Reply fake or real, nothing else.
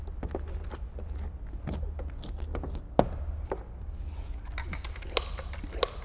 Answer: real